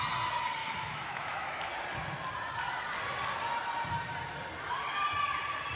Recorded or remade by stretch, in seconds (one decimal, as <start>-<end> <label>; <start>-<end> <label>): 0.0-0.6 recorded; 0.6-1.7 remade; 1.7-5.8 recorded